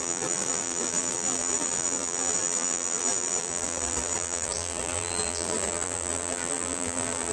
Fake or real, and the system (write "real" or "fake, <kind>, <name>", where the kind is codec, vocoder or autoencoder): fake, vocoder, BigVGAN v2